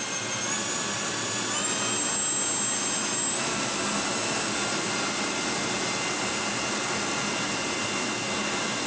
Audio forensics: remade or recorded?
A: recorded